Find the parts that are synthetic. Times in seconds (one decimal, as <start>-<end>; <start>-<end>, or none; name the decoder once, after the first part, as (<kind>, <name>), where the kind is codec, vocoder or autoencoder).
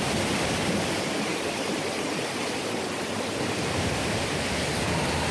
none